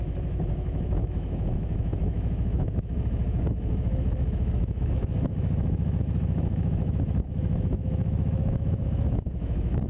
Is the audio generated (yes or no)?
yes